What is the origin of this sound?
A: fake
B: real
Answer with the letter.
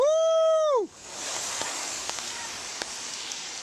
A